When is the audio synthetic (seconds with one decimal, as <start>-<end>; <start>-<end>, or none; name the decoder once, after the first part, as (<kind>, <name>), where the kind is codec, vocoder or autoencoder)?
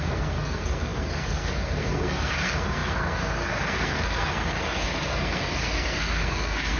0.0-6.8 (codec, SNAC)